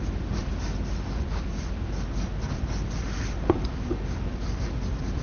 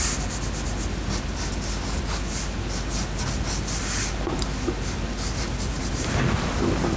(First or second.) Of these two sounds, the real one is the second